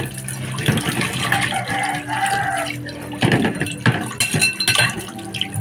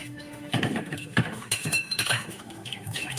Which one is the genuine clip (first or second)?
first